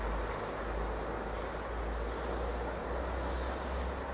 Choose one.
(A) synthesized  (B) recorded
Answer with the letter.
B